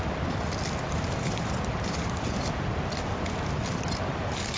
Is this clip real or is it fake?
fake